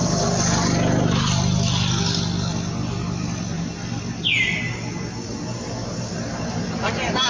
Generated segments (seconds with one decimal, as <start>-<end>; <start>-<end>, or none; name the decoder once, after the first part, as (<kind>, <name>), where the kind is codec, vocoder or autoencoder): none